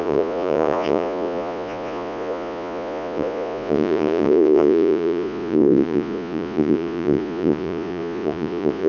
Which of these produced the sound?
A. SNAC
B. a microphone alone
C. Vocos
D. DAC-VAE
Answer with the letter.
C